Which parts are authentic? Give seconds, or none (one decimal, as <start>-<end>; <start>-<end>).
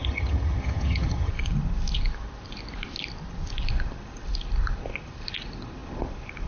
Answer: 1.3-6.5